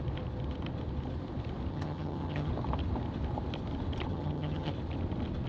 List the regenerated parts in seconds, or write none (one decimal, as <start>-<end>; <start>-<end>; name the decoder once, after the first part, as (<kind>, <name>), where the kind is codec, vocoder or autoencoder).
1.7-2.5 (vocoder, HiFi-GAN); 4.1-4.7